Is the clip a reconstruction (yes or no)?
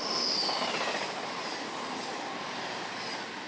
no